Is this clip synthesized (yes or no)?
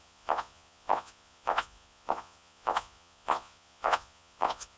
yes